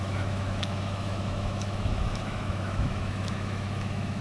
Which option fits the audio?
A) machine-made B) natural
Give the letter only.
A